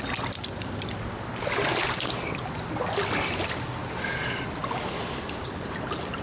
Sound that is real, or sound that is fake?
real